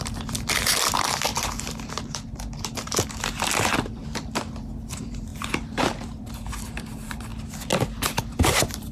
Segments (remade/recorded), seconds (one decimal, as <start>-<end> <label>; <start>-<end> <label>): 0.0-4.0 remade; 4.0-4.8 recorded; 4.8-7.3 remade; 7.3-8.2 recorded; 8.2-8.9 remade